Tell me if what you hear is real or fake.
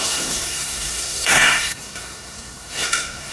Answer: fake